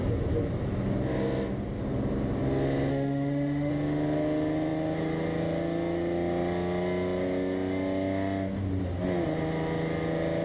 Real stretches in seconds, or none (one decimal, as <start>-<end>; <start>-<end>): 0.0-2.9; 3.7-10.4